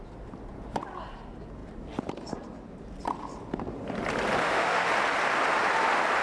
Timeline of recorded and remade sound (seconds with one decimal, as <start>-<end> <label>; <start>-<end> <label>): 0.0-4.4 recorded; 4.4-4.9 remade; 4.9-6.2 recorded

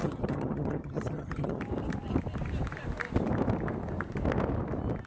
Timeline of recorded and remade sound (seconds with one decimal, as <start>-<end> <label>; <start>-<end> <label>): 0.0-1.6 remade; 1.6-5.1 recorded

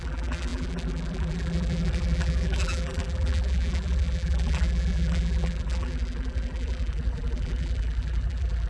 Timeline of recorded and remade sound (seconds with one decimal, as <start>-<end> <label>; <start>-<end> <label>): 0.0-8.7 remade

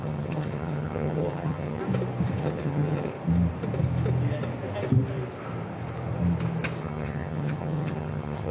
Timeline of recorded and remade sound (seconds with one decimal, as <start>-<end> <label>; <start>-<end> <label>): 0.0-1.8 remade; 1.8-2.4 recorded; 2.4-3.1 remade; 3.1-6.8 recorded; 6.8-8.5 remade

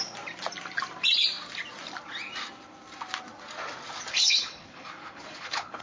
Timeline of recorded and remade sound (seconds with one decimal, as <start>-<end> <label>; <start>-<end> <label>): 0.0-4.1 recorded; 4.1-5.8 remade

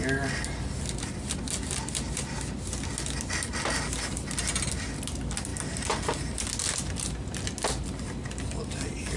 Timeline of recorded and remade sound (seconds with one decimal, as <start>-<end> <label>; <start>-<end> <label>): 0.0-9.2 recorded

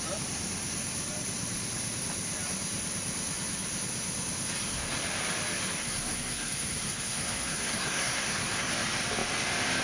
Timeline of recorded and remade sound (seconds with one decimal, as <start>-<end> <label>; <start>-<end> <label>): 0.0-5.8 recorded; 5.8-8.7 remade; 8.7-9.8 recorded